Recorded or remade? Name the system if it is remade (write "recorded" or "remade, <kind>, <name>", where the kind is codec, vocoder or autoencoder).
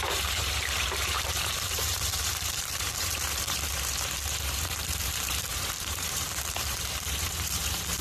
remade, vocoder, BigVGAN v2